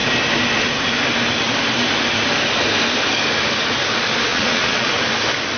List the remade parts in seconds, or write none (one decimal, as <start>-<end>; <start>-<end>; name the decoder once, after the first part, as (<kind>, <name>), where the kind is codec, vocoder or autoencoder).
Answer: 4.3-4.9 (vocoder, Vocos)